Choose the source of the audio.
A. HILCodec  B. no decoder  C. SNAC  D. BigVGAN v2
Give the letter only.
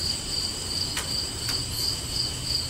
B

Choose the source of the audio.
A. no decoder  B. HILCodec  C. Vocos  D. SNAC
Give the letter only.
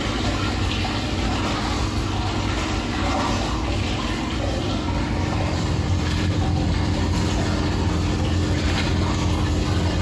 A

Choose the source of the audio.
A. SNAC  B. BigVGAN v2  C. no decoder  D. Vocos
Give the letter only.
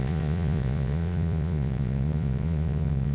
D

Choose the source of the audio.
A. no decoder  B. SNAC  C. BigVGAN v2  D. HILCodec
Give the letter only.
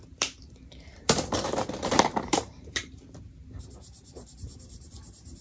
C